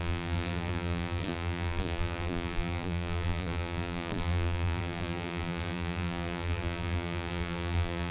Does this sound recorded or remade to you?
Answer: remade